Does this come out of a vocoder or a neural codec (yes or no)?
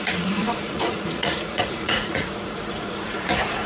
yes